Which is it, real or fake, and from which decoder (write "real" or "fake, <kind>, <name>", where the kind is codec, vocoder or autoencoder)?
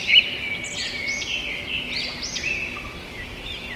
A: real